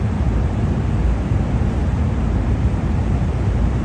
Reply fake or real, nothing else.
fake